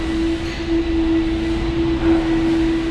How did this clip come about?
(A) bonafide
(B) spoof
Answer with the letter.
A